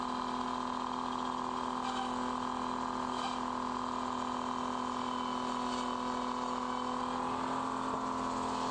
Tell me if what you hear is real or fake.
real